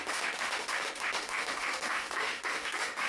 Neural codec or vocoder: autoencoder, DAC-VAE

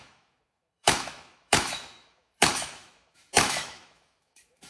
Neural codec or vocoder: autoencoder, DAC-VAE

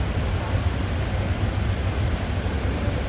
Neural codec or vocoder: none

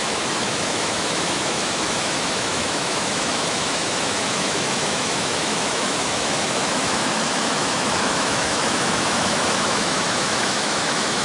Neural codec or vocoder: autoencoder, DAC-VAE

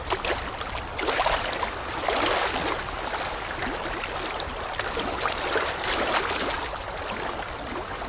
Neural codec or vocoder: none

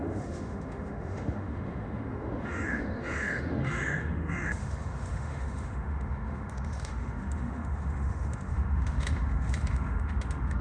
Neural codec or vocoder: autoencoder, DAC-VAE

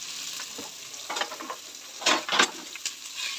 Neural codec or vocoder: none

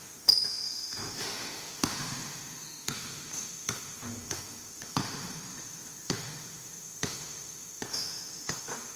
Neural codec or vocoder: autoencoder, DAC-VAE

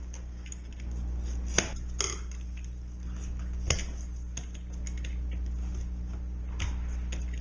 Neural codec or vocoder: none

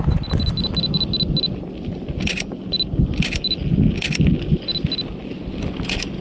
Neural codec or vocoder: none